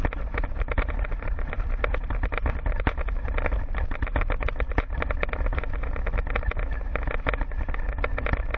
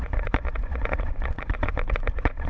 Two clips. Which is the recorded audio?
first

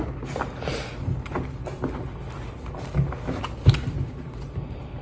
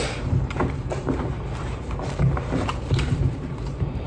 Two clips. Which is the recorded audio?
first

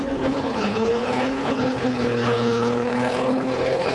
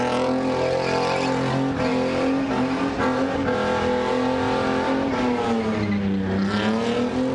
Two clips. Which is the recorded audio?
second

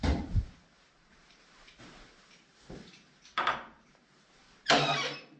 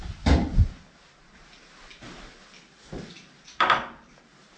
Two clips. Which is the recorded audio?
second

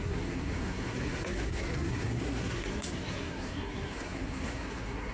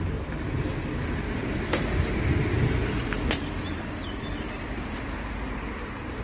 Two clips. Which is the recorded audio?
second